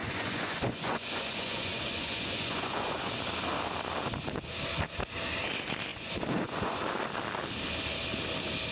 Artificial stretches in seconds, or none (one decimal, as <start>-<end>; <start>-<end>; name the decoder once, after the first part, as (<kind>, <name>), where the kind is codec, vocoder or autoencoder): 0.0-3.1 (vocoder, Vocos); 5.9-6.8